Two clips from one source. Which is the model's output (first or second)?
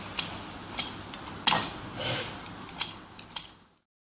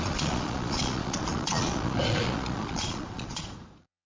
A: second